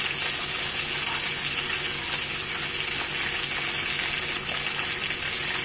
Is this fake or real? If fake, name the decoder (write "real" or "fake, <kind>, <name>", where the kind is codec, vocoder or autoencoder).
real